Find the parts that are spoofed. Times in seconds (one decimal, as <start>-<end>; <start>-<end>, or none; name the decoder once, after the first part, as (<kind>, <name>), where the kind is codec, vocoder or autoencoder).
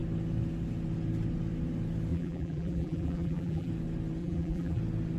2.1-3.7 (vocoder, BigVGAN v2); 4.2-4.8